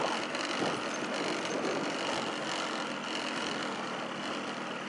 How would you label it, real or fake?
real